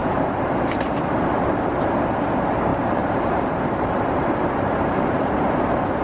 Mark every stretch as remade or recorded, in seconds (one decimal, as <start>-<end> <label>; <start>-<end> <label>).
0.0-1.5 remade; 1.5-2.7 recorded; 2.7-5.5 remade; 5.5-6.0 recorded